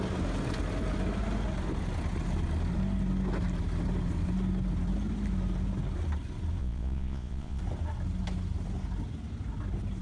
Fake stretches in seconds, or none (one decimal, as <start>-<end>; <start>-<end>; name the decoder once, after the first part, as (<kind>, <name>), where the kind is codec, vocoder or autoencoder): 6.6-7.6 (vocoder, Vocos)